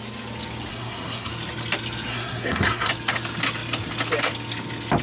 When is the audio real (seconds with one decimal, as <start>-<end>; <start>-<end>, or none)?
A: 0.0-0.7; 1.3-2.1; 2.9-5.0